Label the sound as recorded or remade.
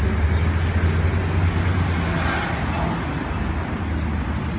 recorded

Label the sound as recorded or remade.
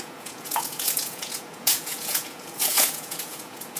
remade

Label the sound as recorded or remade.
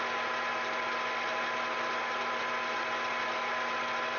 recorded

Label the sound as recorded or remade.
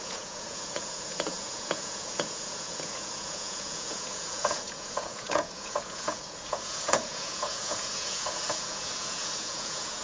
remade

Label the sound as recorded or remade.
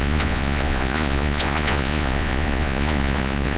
remade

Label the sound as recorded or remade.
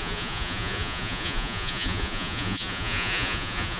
remade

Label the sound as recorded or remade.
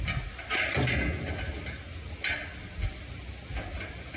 recorded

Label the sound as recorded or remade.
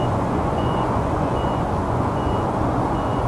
remade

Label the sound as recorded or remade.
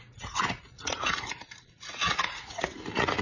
remade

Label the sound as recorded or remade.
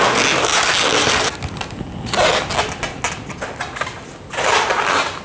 recorded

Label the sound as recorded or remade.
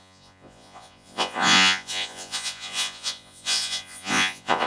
remade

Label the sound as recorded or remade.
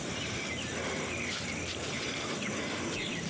recorded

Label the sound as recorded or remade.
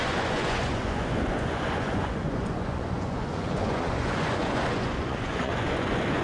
remade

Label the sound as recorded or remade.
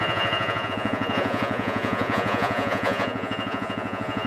remade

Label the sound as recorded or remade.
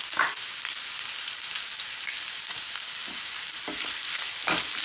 recorded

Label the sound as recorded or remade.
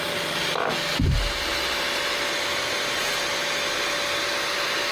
recorded